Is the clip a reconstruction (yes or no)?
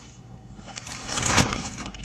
yes